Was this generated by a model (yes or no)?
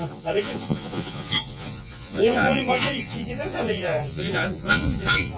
yes